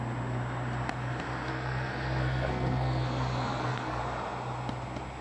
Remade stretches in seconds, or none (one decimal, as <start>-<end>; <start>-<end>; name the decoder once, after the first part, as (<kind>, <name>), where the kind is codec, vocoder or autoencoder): 1.5-4.0 (codec, SNAC)